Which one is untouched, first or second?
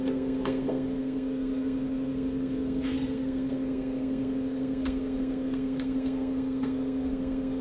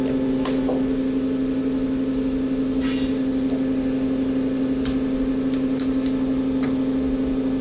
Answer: second